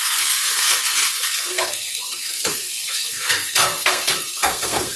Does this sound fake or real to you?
fake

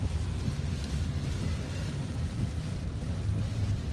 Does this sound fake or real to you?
real